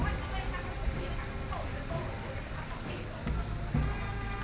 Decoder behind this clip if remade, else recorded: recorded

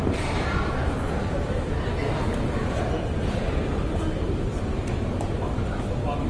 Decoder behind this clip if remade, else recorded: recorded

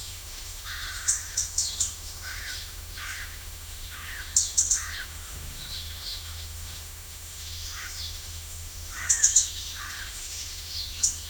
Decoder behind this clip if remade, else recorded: remade, autoencoder, DAC-VAE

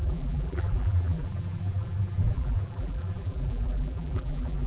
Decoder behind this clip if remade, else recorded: remade, vocoder, BigVGAN v2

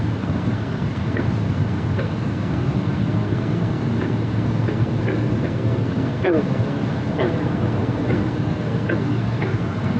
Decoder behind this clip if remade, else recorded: remade, codec, SNAC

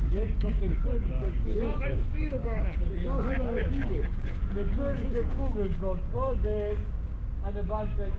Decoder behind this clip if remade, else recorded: remade, codec, DAC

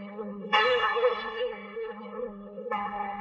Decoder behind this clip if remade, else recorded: remade, codec, SNAC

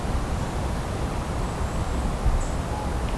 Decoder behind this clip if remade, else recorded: recorded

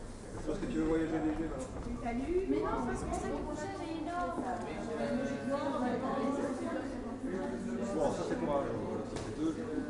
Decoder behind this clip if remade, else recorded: recorded